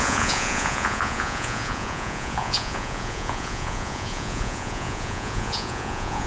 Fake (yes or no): yes